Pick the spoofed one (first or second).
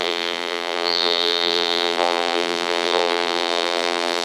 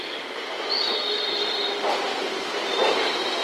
first